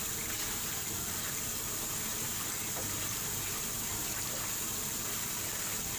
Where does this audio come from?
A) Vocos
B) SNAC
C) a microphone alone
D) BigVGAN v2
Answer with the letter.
D